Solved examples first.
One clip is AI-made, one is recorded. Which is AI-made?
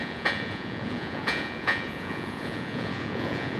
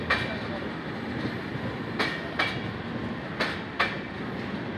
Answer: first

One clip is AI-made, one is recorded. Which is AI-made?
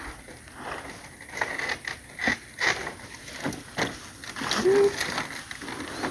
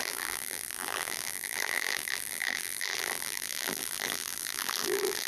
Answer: second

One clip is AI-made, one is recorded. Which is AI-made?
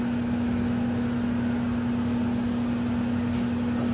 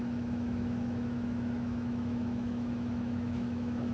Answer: second